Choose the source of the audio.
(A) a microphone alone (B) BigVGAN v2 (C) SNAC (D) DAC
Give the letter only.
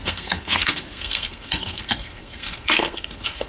C